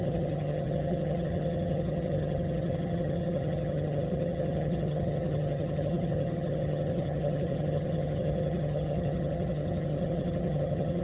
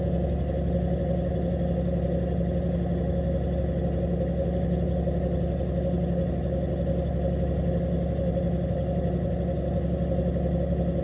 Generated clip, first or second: first